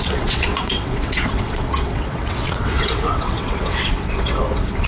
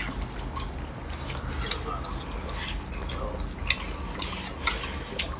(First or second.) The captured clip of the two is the second